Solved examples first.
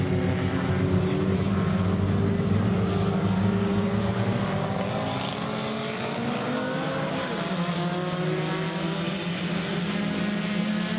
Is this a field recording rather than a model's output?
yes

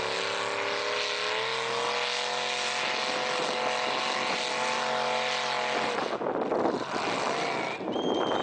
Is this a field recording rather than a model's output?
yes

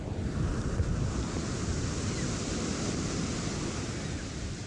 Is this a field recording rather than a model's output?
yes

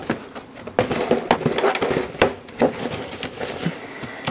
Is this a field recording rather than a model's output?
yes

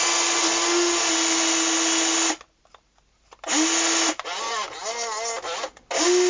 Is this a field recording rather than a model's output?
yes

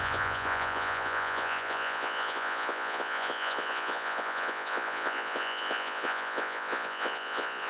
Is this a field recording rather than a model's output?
no